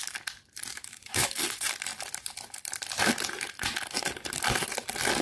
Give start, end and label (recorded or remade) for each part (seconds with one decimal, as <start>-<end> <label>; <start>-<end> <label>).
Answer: 0.0-0.7 recorded; 0.7-1.4 remade; 1.4-5.2 recorded